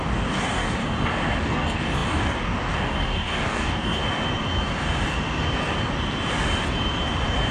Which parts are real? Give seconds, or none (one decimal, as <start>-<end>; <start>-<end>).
0.8-1.4; 4.0-7.5

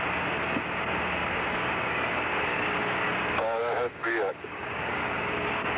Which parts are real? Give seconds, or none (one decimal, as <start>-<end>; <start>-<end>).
0.0-1.2; 2.1-2.5

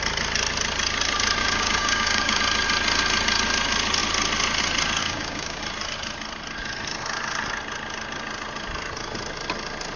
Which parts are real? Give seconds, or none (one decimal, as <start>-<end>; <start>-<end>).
0.0-1.4; 2.4-5.0; 5.6-10.0

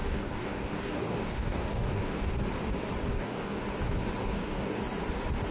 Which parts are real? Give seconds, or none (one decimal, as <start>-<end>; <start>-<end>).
2.3-3.1; 3.6-4.2; 4.8-5.5

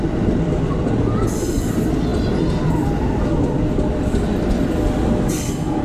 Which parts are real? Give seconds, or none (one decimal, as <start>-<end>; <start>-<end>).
0.0-5.8

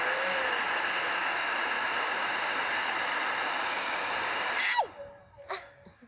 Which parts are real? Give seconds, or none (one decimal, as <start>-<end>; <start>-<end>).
0.4-1.1; 1.5-5.2